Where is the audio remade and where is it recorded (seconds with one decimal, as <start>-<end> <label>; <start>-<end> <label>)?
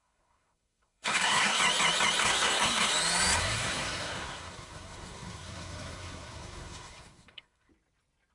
0.0-1.6 remade; 1.6-2.2 recorded; 2.2-2.9 remade; 2.9-3.4 recorded; 3.4-7.7 remade; 7.7-8.3 recorded